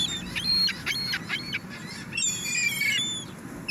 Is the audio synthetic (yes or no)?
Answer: yes